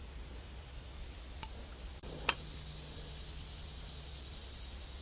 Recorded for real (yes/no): yes